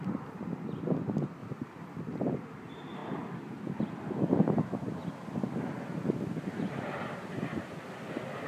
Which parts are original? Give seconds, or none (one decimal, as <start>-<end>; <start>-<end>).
0.0-1.4; 2.0-8.5

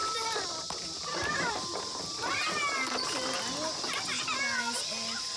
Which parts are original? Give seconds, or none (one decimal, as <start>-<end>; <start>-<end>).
0.0-5.4

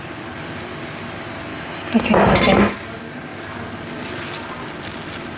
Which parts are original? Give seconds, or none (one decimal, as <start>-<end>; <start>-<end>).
0.0-1.5; 2.7-5.4

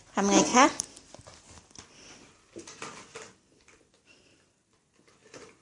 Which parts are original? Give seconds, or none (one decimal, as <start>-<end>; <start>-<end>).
0.0-5.6

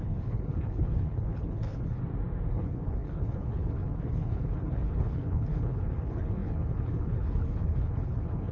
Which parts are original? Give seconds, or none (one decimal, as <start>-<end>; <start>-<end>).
2.0-2.5

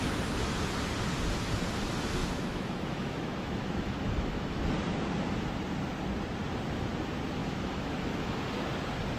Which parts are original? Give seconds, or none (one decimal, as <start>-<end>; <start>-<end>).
0.0-2.2; 4.6-7.4; 8.4-9.2

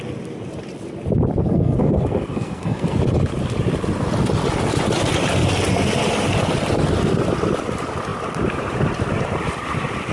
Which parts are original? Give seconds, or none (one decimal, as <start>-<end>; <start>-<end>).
0.0-1.4; 3.0-10.1

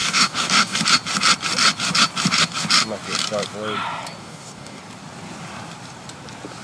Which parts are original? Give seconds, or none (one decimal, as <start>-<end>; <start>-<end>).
0.8-4.2; 4.8-6.6